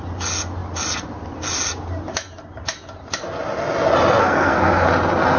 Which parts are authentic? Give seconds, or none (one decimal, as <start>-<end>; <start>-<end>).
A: 0.0-4.2; 4.9-5.4